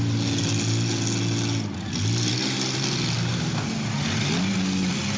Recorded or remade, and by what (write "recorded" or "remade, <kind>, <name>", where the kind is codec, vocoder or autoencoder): recorded